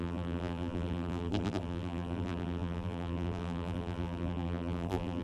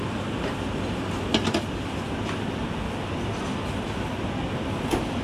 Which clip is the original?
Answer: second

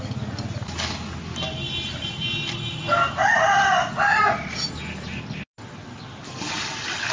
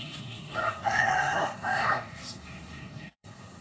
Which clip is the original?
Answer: first